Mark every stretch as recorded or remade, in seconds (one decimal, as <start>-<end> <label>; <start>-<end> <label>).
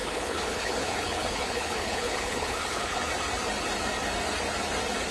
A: 0.0-3.1 remade; 3.1-5.1 recorded